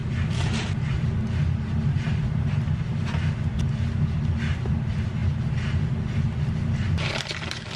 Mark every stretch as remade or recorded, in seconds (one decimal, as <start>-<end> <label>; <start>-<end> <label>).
0.0-7.8 recorded